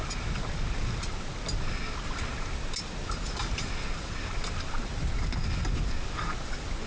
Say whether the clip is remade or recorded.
recorded